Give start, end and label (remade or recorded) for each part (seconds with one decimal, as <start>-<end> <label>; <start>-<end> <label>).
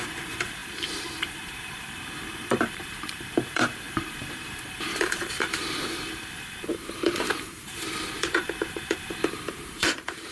0.0-10.3 remade